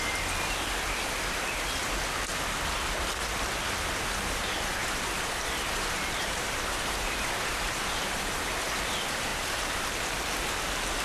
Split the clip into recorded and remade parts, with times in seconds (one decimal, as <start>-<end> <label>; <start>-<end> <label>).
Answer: 0.0-4.8 recorded; 4.8-8.4 remade; 8.4-9.3 recorded; 9.3-9.9 remade; 9.9-11.0 recorded